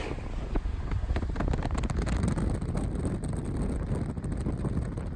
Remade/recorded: recorded